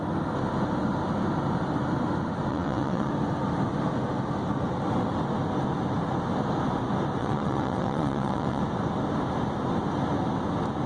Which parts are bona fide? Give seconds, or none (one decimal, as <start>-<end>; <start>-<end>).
0.0-2.5; 3.1-7.2; 8.6-10.9